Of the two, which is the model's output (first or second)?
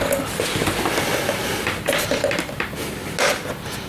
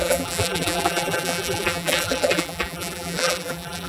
second